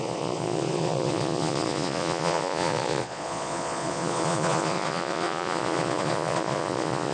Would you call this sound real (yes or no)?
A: no